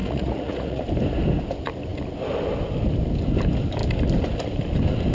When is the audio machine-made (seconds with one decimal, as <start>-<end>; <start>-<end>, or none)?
0.0-0.8